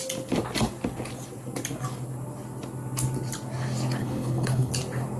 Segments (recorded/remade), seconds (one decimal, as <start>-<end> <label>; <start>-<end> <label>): 0.0-4.0 recorded; 4.0-4.7 remade; 4.7-5.2 recorded